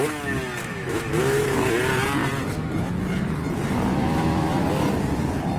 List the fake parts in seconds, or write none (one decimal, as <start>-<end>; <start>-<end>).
0.6-1.7; 4.0-4.6